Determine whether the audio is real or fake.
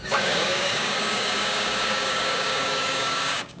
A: fake